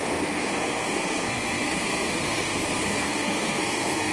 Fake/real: fake